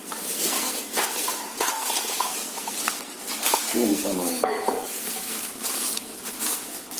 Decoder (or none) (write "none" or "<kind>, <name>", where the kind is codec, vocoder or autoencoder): codec, SNAC